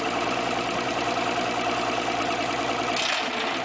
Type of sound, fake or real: real